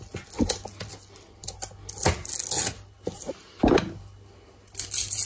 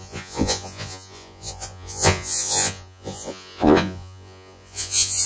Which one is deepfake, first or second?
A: second